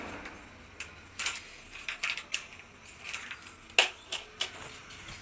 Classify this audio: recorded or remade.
recorded